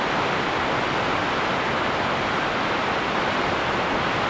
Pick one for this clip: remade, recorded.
recorded